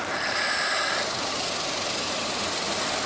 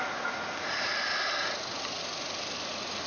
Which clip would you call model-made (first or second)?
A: first